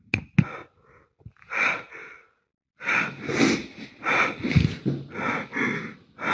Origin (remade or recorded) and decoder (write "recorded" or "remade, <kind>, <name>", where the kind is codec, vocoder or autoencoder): recorded